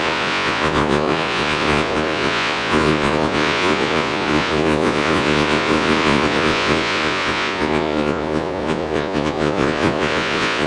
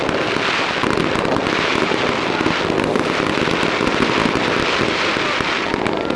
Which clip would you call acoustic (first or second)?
second